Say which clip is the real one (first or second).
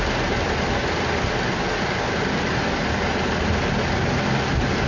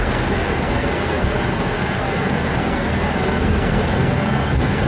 first